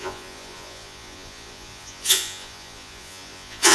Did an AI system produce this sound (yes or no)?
yes